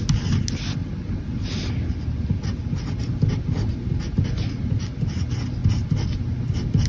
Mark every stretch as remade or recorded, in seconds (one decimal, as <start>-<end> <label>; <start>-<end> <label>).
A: 0.0-6.9 recorded